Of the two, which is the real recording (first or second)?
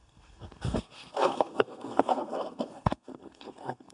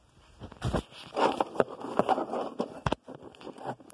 second